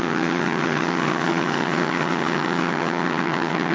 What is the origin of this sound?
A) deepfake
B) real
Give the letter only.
A